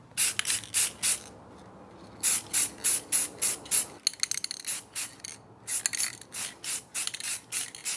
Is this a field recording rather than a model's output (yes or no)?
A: yes